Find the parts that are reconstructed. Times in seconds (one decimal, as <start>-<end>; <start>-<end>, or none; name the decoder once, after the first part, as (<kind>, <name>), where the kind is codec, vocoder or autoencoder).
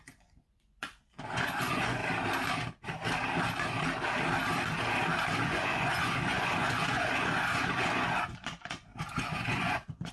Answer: 0.0-2.0 (vocoder, Vocos); 5.4-10.1